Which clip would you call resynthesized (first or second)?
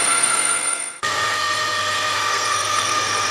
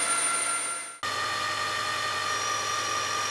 first